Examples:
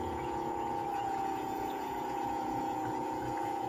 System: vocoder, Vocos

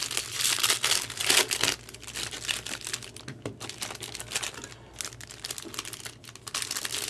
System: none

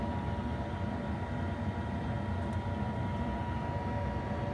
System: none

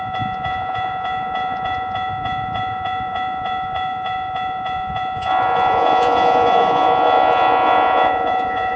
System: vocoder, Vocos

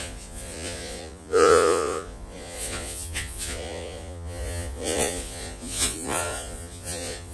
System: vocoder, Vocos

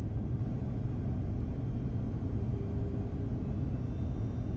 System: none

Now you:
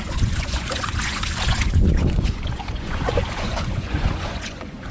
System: vocoder, Vocos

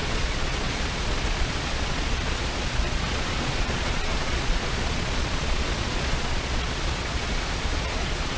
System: vocoder, Vocos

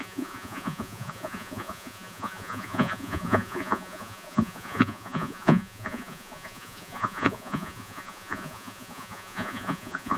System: vocoder, Vocos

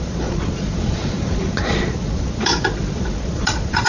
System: vocoder, Vocos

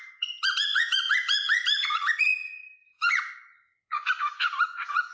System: vocoder, Vocos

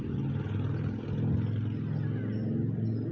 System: none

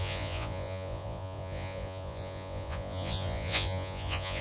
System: vocoder, Vocos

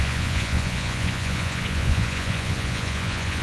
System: vocoder, Vocos